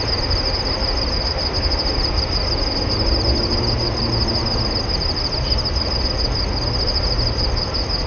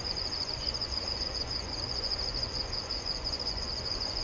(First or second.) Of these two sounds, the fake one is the second